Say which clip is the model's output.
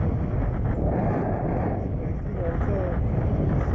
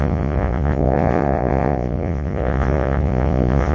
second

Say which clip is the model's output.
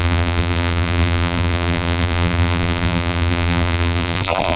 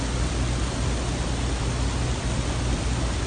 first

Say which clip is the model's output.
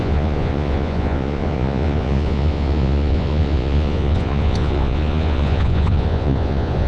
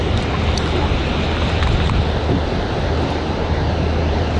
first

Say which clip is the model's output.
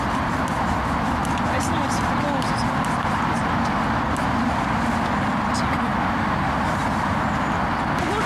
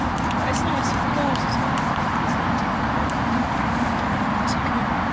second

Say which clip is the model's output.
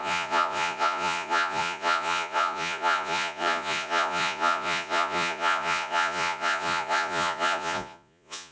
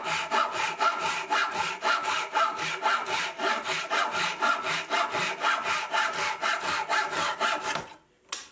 first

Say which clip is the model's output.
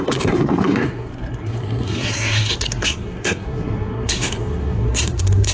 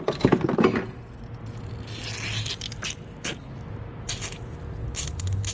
first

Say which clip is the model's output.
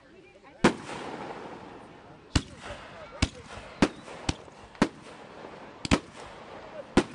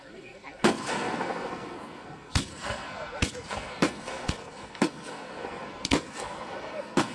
second